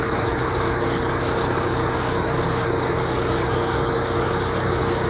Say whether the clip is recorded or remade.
remade